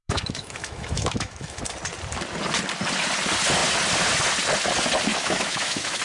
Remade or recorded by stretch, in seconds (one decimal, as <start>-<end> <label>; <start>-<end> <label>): 0.0-1.6 remade; 1.6-5.1 recorded; 5.1-6.0 remade